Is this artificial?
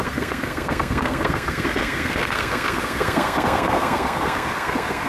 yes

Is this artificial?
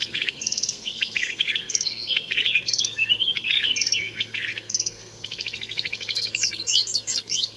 yes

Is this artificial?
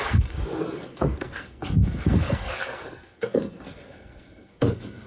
yes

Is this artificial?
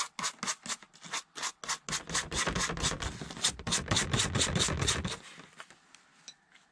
no